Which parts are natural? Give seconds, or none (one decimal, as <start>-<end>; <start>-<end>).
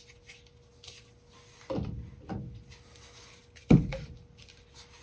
0.0-5.0